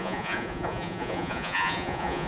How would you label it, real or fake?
fake